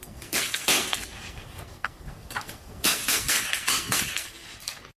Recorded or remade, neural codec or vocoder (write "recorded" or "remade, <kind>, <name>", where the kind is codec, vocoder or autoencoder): remade, codec, SNAC